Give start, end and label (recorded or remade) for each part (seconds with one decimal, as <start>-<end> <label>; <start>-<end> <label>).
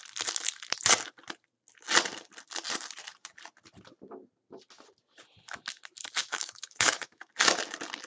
0.0-6.2 recorded; 6.2-7.3 remade; 7.3-8.1 recorded